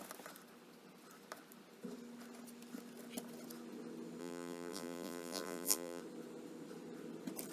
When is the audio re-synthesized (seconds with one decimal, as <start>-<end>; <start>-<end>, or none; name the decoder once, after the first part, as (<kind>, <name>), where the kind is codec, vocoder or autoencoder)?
4.2-6.0 (vocoder, BigVGAN v2)